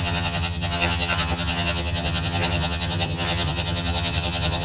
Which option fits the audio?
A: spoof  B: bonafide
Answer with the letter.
A